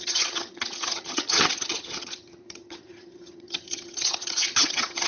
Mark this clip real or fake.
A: fake